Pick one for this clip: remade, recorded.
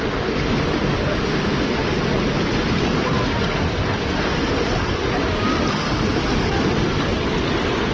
recorded